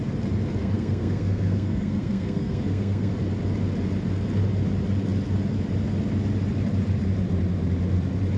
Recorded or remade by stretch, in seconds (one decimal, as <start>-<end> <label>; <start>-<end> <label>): 0.0-0.6 recorded; 0.6-3.1 remade; 3.1-8.4 recorded